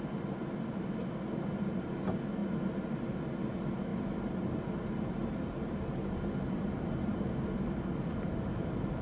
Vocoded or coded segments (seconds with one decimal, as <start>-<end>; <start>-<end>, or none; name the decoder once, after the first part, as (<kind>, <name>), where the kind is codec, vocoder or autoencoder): 3.9-7.3 (vocoder, BigVGAN v2)